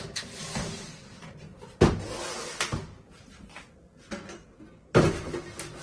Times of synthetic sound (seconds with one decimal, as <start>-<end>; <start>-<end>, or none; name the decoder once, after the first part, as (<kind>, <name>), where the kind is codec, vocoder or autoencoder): none